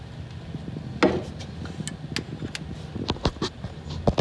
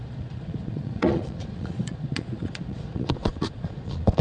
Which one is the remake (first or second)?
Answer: second